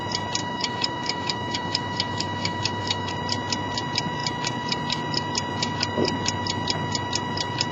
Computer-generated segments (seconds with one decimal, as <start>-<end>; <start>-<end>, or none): 0.4-3.1